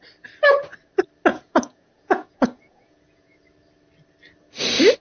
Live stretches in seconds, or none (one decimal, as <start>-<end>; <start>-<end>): 0.0-1.3; 3.4-5.0